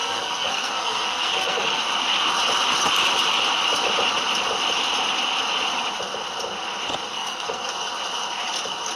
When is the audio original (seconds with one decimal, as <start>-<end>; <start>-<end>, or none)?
1.8-7.1; 7.7-9.0